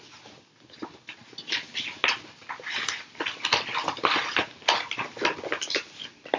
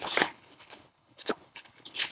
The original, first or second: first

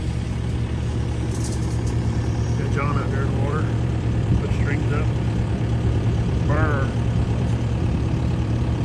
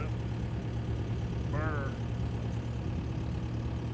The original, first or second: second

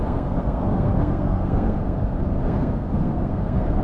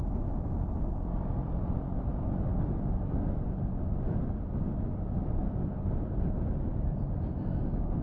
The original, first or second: second